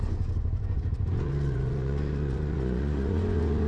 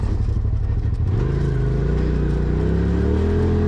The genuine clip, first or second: second